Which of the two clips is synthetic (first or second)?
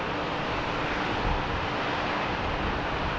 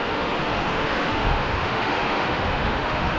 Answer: second